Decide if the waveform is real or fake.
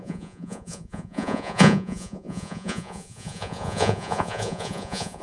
fake